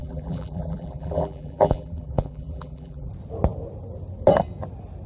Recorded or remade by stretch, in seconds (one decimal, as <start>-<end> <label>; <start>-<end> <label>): 0.0-3.1 remade; 3.1-5.1 recorded